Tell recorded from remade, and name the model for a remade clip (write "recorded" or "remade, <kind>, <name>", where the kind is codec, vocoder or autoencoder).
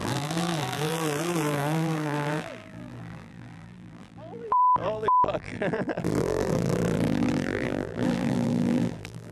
remade, vocoder, BigVGAN v2